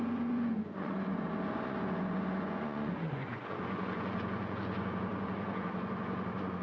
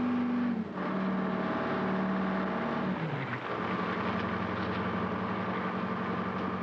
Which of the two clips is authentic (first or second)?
second